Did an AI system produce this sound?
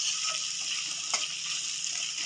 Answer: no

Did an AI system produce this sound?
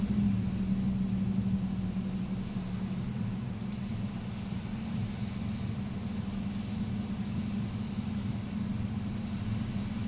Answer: no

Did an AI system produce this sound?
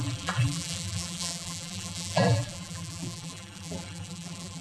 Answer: yes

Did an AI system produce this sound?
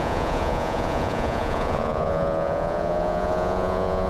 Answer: yes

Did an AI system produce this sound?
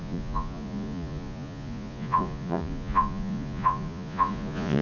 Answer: yes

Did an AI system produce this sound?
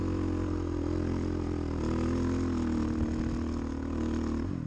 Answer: no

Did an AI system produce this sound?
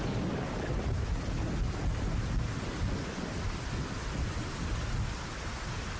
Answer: no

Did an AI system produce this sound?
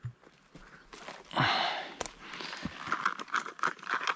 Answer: no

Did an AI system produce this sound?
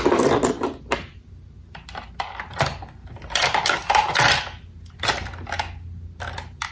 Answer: no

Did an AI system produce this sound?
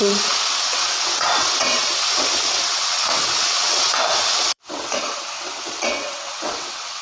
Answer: yes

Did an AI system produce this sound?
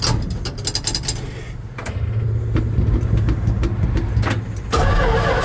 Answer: no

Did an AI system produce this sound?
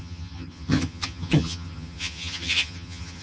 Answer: yes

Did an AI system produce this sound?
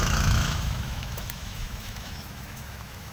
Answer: yes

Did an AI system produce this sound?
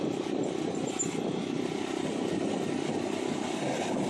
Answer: no